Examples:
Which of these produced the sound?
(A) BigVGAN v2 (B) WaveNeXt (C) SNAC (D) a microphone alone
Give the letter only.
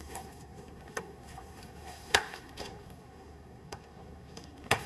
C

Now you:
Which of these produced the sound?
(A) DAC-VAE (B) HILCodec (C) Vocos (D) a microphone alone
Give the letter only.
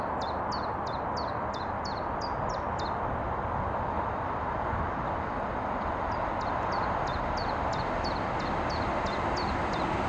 D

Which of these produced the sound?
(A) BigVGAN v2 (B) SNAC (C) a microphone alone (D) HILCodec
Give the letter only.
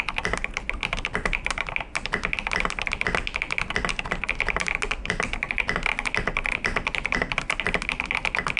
C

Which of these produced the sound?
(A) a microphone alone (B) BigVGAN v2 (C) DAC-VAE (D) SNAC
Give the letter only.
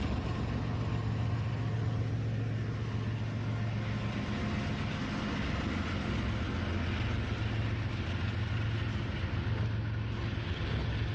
A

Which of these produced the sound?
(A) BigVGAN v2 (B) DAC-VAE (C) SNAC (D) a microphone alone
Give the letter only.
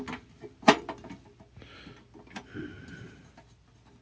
D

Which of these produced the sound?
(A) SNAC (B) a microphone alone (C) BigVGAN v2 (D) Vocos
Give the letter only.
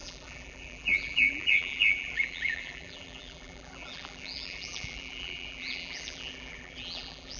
C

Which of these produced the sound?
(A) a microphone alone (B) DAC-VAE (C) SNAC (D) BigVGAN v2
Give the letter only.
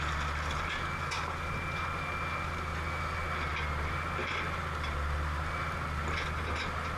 A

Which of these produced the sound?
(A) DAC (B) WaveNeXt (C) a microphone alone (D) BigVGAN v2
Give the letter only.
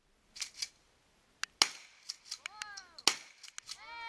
C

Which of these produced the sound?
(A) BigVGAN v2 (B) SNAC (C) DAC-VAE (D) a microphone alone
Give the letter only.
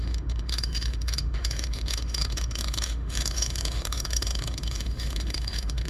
C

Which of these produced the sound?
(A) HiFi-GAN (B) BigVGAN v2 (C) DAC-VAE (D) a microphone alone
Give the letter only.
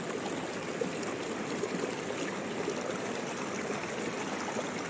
D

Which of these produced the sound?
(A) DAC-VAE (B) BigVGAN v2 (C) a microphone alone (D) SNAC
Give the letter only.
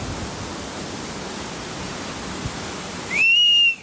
C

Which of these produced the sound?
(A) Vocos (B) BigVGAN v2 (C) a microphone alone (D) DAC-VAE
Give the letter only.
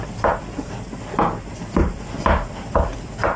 C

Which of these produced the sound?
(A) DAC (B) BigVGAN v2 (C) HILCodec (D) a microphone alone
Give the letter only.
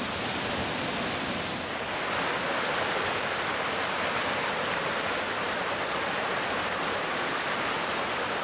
D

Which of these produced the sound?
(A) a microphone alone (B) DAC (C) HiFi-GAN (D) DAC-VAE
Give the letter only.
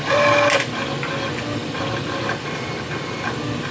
A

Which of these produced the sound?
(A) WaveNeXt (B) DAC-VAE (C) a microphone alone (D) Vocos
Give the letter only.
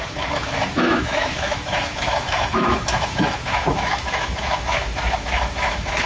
B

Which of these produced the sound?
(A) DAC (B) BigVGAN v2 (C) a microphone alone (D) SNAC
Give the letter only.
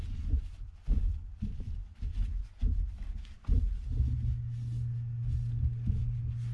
C